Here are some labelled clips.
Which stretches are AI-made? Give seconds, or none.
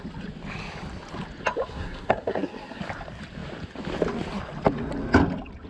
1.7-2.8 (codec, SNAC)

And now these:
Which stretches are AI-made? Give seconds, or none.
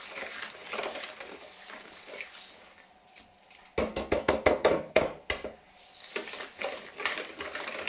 3.9-5.0 (codec, SNAC)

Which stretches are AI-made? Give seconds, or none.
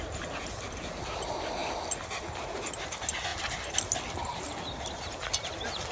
none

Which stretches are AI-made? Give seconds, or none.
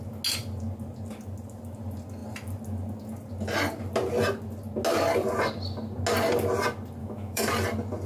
7.0-7.5 (autoencoder, DAC-VAE)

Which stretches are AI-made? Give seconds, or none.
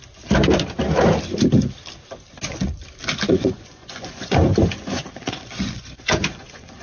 3.3-4.5 (vocoder, Vocos); 5.1-6.8